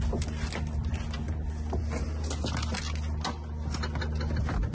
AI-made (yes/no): no